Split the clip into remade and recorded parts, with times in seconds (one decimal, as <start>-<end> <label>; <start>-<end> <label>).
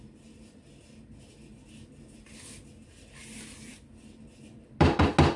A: 0.0-5.4 recorded